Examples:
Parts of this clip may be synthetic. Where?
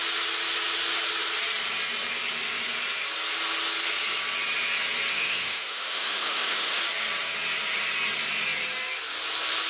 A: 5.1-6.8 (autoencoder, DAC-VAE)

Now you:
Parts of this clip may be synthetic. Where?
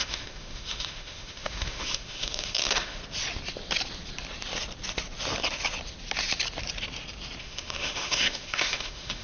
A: 0.0-3.0 (autoencoder, DAC-VAE); 7.4-9.2